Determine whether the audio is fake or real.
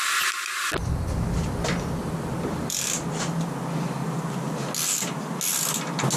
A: real